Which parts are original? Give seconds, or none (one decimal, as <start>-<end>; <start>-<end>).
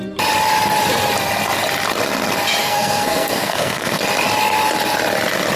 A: 0.0-2.6; 4.0-5.6